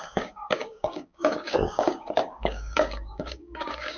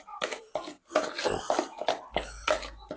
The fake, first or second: first